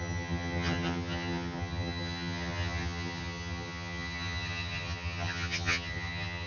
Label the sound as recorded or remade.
remade